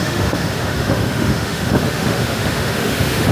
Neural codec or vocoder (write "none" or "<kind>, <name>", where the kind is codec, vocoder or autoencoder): autoencoder, DAC-VAE